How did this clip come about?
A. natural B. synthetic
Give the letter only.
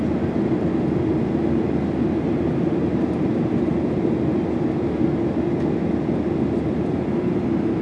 A